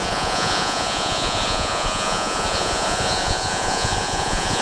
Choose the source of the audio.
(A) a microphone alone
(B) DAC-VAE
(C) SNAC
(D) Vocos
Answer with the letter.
D